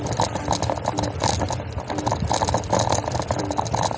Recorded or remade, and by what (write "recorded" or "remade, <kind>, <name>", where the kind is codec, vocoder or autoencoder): recorded